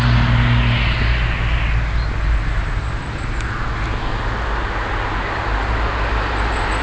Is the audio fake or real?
real